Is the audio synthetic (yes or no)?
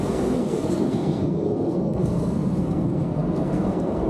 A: yes